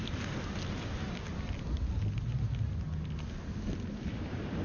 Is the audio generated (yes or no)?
no